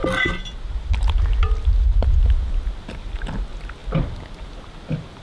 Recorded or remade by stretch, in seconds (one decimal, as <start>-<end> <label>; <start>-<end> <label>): 0.0-5.2 recorded